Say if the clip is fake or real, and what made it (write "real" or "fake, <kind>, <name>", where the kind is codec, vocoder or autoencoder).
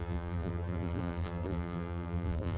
fake, vocoder, BigVGAN v2